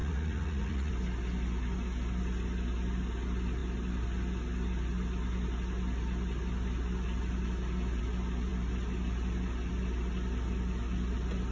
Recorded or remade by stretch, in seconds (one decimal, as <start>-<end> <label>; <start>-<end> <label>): 0.0-0.9 remade; 0.9-11.5 recorded